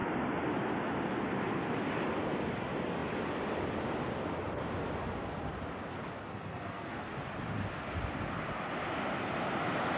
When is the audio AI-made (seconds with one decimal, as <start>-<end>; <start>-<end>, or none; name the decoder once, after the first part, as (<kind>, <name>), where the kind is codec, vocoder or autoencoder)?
6.3-7.1 (codec, SNAC)